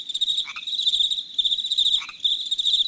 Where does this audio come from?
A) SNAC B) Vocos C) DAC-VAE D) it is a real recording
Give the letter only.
D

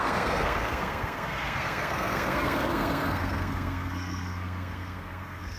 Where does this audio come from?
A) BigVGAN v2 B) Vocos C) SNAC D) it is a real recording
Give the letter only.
C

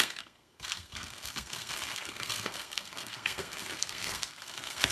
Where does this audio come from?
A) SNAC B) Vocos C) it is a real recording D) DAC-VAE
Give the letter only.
A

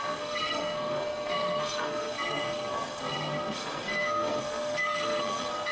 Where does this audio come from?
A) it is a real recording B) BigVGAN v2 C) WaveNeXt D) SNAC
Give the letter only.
D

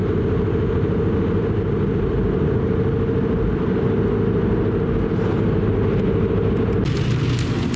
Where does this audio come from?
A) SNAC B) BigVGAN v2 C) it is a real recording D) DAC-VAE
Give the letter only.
C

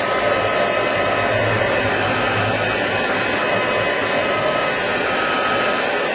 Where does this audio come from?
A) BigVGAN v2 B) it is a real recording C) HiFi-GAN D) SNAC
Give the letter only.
B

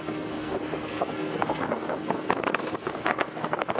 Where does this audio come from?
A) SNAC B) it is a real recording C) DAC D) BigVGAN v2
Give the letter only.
A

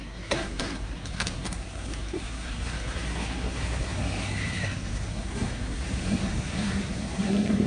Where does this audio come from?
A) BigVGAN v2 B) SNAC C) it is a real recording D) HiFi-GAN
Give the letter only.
B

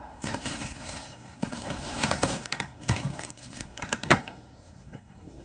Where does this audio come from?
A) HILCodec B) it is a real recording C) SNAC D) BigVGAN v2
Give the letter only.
C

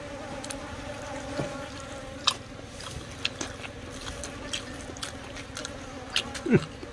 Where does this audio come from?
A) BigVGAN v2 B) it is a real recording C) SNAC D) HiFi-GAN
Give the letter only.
B